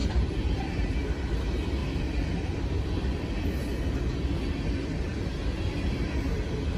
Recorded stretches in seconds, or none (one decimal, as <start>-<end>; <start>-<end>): 0.6-1.8; 2.7-6.8